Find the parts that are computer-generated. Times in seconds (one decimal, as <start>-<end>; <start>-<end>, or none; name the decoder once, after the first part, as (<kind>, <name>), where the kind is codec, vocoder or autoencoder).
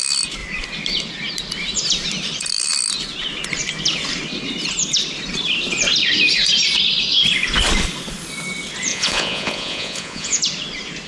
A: 8.9-10.4 (vocoder, Vocos)